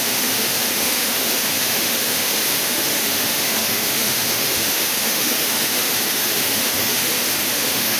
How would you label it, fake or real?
fake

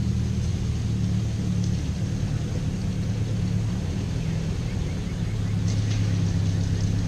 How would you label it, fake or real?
real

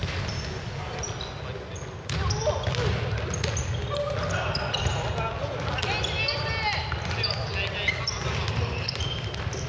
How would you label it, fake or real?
real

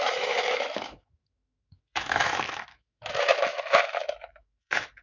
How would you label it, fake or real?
fake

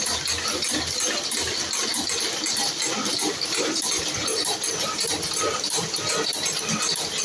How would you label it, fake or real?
real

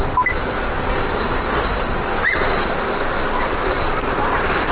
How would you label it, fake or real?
real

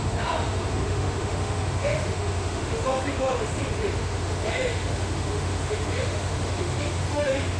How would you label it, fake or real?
fake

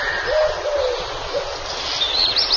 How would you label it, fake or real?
real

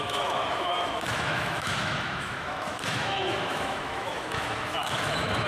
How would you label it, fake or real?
fake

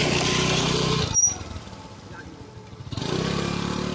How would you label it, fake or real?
real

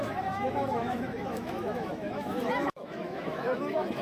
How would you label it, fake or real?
fake